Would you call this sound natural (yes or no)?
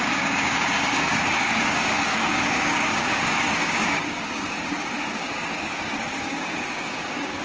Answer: no